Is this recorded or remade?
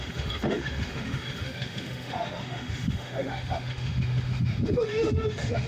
remade